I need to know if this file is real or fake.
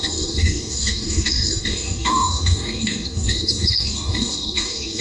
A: fake